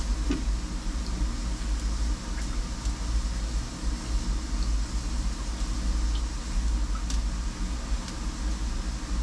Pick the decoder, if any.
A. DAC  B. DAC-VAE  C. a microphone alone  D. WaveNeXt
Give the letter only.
C